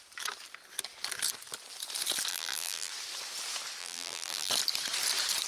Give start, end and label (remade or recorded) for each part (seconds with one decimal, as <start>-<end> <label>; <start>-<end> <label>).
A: 0.0-2.3 recorded; 2.3-2.9 remade; 2.9-3.8 recorded; 3.8-4.5 remade; 4.5-5.5 recorded